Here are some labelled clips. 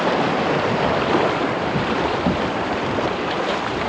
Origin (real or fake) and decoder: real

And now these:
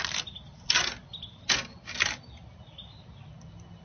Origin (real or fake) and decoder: real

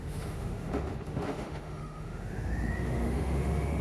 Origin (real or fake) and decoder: fake, autoencoder, DAC-VAE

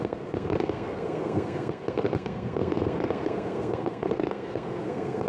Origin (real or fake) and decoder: fake, codec, SNAC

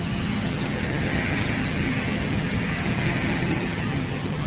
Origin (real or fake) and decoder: fake, vocoder, HiFi-GAN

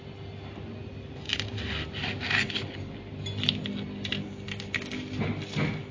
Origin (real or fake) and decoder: real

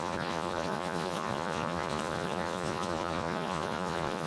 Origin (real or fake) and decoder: fake, vocoder, Vocos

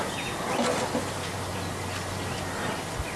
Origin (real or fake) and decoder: real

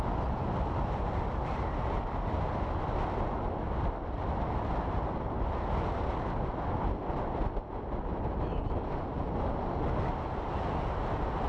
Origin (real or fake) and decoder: real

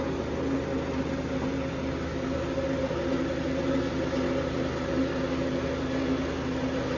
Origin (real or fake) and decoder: real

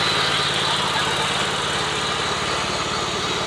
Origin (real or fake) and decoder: real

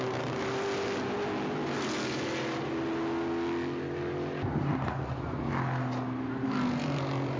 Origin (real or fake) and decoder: real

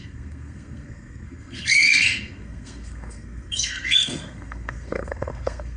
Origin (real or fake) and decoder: fake, codec, SNAC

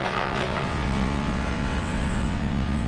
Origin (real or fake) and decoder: fake, vocoder, WaveNeXt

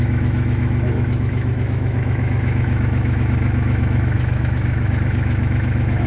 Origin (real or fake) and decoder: fake, autoencoder, DAC-VAE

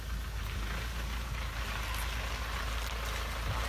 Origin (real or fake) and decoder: real